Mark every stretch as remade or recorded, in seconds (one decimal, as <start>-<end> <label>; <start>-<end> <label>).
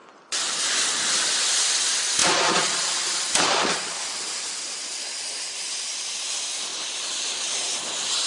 0.0-2.2 recorded; 2.2-6.0 remade; 6.0-8.3 recorded